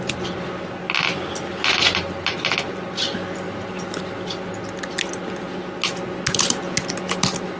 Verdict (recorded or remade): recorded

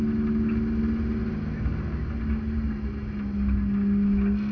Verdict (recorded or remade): recorded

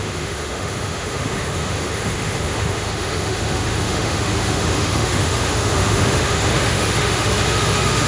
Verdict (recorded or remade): remade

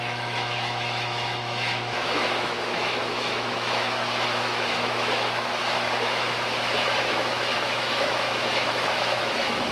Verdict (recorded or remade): remade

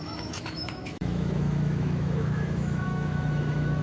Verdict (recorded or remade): remade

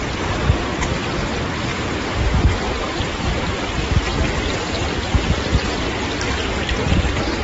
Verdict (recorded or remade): recorded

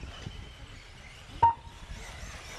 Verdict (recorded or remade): recorded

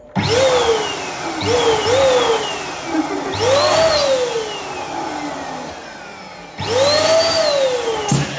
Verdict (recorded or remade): recorded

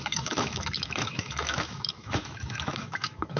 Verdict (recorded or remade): remade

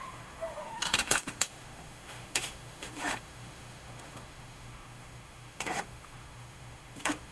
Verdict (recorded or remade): remade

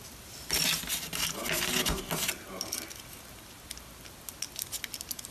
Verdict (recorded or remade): recorded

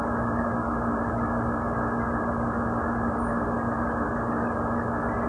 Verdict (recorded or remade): recorded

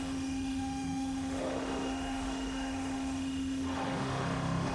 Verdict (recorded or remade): remade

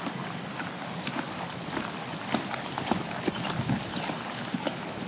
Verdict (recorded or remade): recorded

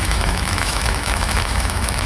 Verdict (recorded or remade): remade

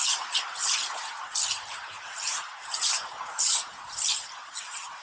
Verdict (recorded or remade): recorded